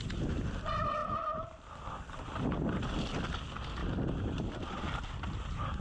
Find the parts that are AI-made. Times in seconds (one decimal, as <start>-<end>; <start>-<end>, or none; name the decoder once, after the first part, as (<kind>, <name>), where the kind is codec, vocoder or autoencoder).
none